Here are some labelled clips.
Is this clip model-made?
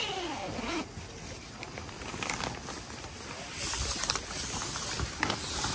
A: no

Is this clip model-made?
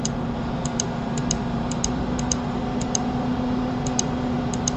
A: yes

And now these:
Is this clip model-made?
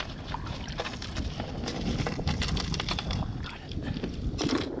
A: no